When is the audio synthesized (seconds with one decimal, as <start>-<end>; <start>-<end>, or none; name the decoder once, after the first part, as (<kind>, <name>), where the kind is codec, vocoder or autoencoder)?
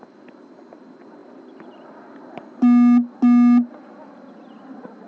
none